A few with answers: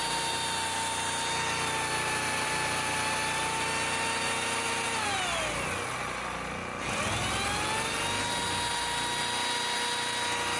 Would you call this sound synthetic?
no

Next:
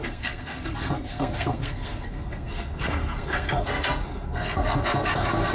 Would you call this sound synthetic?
yes